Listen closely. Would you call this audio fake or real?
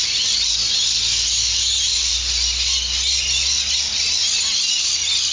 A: real